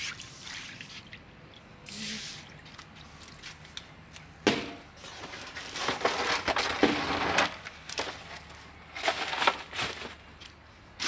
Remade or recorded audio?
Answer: recorded